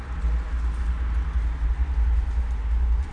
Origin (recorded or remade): recorded